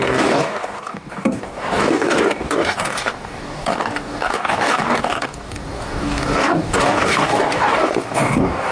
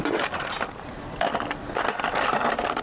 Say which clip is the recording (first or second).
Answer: second